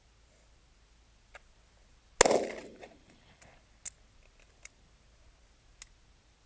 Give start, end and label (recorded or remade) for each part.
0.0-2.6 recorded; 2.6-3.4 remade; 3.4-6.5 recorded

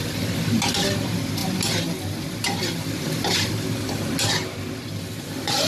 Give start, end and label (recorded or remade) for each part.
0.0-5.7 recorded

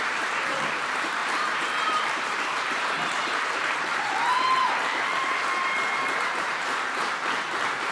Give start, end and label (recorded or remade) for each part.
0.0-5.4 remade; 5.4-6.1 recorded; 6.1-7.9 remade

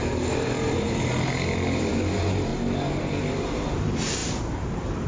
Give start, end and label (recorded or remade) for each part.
0.0-2.5 remade; 2.5-3.3 recorded; 3.3-5.1 remade

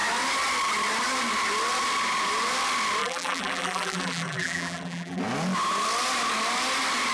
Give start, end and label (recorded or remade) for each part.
0.0-3.0 recorded; 3.0-5.2 remade; 5.2-7.1 recorded

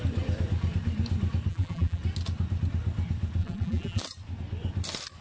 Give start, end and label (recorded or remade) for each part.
0.0-1.5 recorded; 1.5-2.0 remade; 2.0-3.4 recorded; 3.4-4.0 remade; 4.0-5.2 recorded